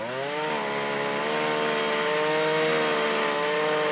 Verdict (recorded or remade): recorded